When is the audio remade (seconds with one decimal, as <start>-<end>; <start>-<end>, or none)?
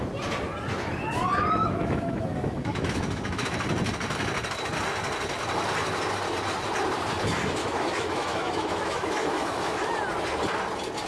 1.6-3.6; 7.6-9.9